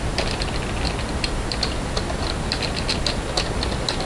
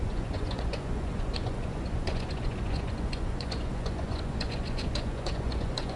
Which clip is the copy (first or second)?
second